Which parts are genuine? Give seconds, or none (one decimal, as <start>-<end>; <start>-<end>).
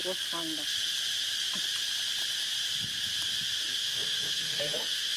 0.0-3.8